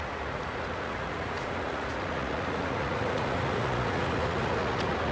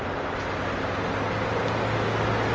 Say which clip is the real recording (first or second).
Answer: second